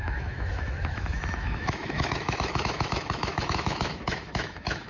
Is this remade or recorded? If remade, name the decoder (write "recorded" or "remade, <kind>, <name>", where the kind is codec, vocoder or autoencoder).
remade, autoencoder, DAC-VAE